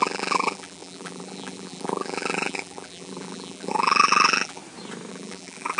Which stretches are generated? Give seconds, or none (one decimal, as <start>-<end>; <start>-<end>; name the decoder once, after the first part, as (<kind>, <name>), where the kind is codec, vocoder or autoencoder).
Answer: 0.0-4.6 (vocoder, BigVGAN v2); 5.1-5.8